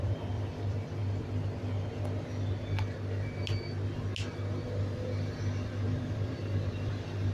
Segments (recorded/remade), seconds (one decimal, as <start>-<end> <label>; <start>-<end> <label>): 0.0-1.0 remade; 1.0-5.4 recorded; 5.4-7.3 remade